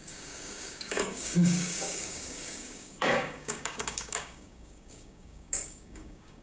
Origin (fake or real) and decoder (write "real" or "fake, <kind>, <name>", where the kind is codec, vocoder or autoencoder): fake, codec, DAC